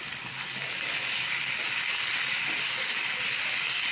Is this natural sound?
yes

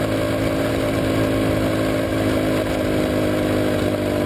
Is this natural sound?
yes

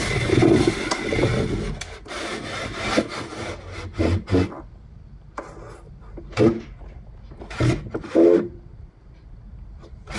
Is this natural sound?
yes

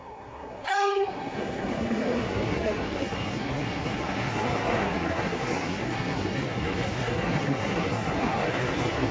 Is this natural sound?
no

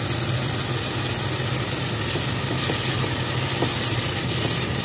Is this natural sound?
yes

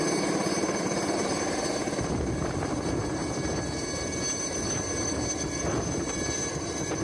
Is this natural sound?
yes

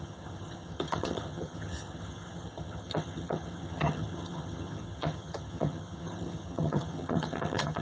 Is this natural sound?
no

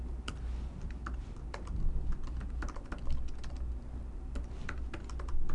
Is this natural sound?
yes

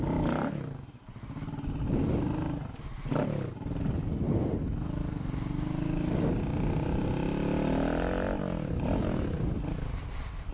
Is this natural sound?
yes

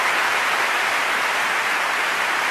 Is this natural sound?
yes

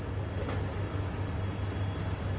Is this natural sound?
yes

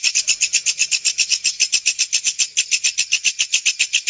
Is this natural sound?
yes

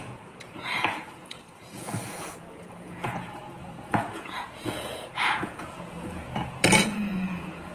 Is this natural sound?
no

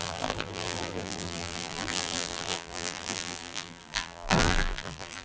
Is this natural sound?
no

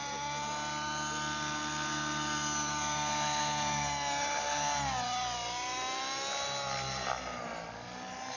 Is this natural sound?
yes